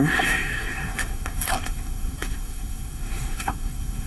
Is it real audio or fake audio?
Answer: fake